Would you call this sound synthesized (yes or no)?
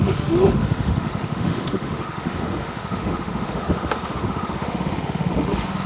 yes